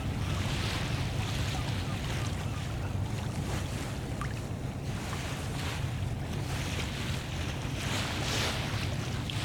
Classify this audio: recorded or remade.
recorded